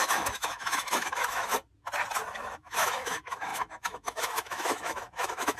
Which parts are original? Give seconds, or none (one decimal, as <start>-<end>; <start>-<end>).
1.5-2.3